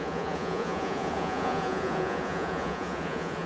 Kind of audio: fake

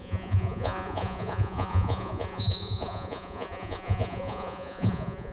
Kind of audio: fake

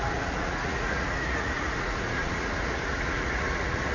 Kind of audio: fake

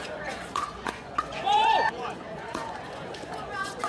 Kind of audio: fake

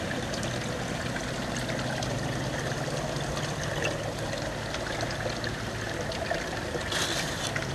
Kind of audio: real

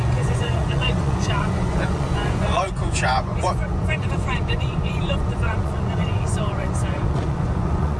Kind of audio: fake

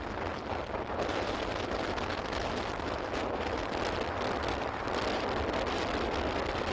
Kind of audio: real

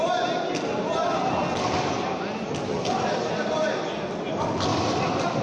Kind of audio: real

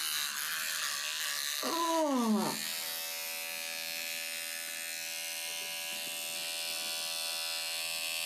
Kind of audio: real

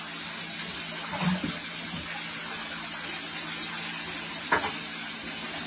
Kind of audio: real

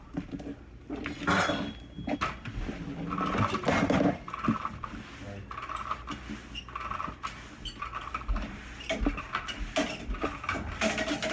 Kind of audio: real